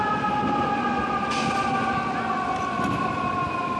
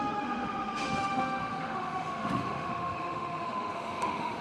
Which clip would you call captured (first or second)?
first